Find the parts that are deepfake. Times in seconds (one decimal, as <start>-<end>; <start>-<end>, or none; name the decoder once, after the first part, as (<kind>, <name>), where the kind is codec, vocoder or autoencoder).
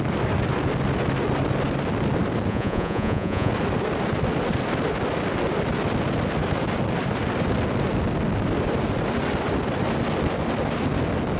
2.5-3.5 (vocoder, Vocos)